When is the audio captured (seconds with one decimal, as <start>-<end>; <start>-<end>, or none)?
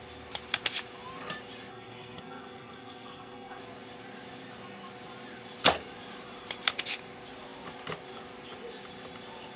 0.0-1.7; 3.6-9.6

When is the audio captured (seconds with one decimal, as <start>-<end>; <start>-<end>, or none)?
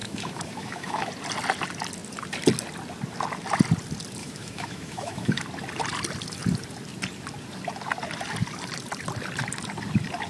1.1-4.2; 5.4-10.3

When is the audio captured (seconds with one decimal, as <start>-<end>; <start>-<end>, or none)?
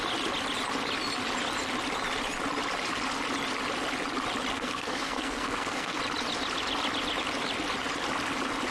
0.0-4.5; 6.0-8.7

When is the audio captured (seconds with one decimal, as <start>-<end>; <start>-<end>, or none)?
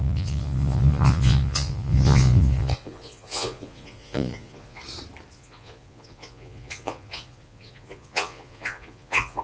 4.8-5.3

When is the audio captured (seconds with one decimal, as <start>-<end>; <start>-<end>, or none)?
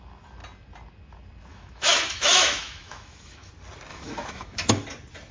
0.0-1.5; 3.5-3.9; 4.7-5.3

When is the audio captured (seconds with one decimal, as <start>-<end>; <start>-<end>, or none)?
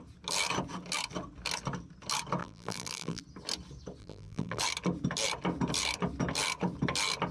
0.0-2.4; 3.2-4.0; 4.6-7.3